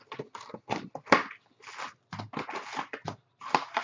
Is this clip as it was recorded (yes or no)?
yes